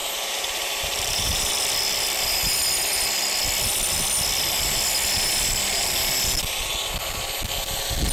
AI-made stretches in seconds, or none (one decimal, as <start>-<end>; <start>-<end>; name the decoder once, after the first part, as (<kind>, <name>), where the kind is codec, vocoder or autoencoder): 0.0-1.5 (vocoder, BigVGAN v2)